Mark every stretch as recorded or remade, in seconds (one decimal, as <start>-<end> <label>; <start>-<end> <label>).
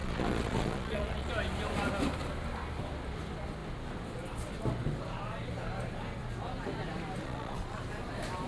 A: 0.0-1.3 remade; 1.3-7.2 recorded; 7.2-7.8 remade; 7.8-8.5 recorded